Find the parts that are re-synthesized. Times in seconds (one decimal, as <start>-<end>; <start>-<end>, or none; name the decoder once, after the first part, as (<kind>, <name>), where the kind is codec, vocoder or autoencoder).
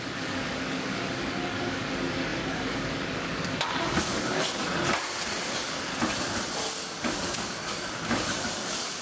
0.0-4.6 (codec, DAC); 5.5-5.9; 6.7-9.0